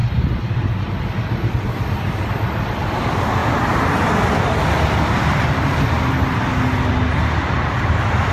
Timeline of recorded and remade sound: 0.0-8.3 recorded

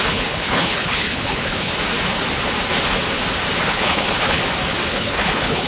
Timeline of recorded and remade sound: 0.0-1.7 remade; 1.7-3.6 recorded; 3.6-4.4 remade; 4.4-4.9 recorded; 4.9-5.7 remade

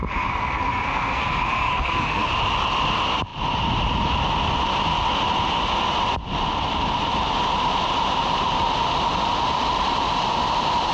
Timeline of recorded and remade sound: 0.0-2.3 remade; 2.3-10.9 recorded

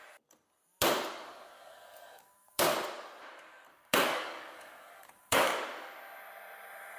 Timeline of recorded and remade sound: 0.0-1.1 recorded; 1.1-2.7 remade; 2.7-3.7 recorded; 3.7-5.5 remade; 5.5-7.0 recorded

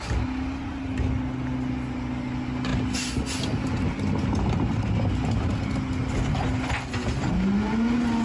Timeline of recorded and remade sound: 0.0-8.2 recorded